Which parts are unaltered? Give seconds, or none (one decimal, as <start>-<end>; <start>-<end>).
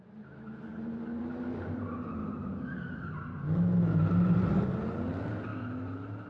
0.0-2.2; 3.1-5.5